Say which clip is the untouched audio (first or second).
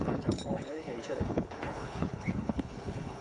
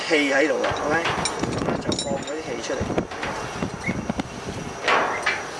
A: second